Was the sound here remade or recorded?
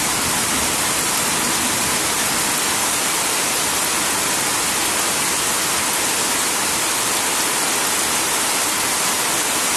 recorded